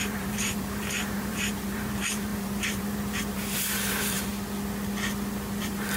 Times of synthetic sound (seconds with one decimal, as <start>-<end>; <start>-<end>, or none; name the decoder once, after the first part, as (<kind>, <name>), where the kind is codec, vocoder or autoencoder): 0.0-4.3 (vocoder, BigVGAN v2); 5.6-6.0

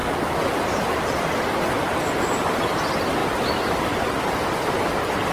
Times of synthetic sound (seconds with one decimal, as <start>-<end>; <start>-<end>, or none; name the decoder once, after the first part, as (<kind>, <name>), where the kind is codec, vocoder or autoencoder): none

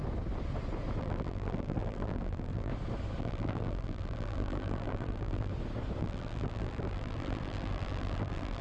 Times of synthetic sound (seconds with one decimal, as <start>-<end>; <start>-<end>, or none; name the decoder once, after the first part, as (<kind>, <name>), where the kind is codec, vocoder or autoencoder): 1.0-2.7 (vocoder, BigVGAN v2); 3.2-5.5; 6.0-8.6

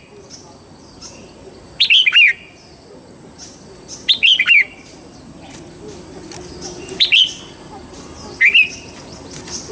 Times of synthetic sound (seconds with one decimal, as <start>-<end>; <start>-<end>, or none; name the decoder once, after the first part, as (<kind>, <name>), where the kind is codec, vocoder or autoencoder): none